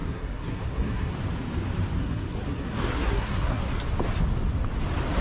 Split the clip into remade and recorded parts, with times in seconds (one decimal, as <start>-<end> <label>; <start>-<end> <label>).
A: 0.0-1.1 remade; 1.1-2.0 recorded; 2.0-3.6 remade; 3.6-5.2 recorded